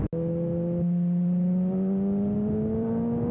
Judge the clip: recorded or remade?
recorded